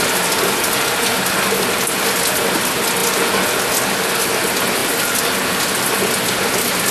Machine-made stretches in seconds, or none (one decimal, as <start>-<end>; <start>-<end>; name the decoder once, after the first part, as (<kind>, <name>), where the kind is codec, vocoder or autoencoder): none